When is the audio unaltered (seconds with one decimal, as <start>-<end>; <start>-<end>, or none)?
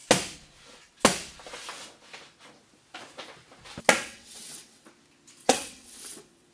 0.0-4.0; 4.9-5.4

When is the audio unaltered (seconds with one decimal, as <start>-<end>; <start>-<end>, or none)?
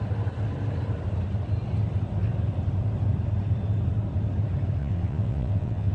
0.0-4.8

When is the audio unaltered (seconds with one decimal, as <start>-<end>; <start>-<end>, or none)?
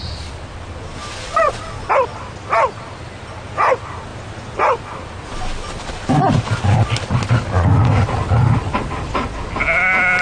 0.0-10.2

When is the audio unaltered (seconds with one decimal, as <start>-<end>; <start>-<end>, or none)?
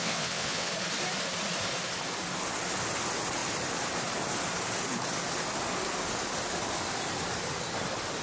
0.7-8.2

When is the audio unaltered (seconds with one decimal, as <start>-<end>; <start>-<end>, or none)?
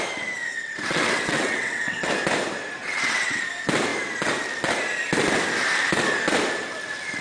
0.0-0.5; 2.1-2.8; 3.4-7.2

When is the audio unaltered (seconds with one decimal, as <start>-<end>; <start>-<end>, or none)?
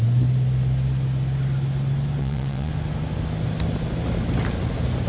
0.0-2.2; 2.7-5.1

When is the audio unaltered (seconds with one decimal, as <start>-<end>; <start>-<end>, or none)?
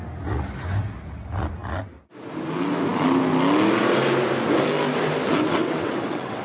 0.0-5.4